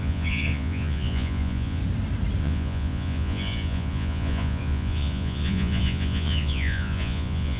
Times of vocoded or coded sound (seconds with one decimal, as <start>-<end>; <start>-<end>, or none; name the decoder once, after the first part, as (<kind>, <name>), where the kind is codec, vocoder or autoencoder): 0.0-1.8 (vocoder, Vocos); 2.4-7.6